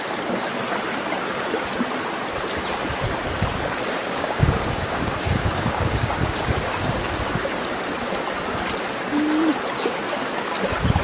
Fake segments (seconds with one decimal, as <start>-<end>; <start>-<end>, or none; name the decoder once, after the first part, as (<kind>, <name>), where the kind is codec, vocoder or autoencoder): 4.0-7.1 (codec, DAC)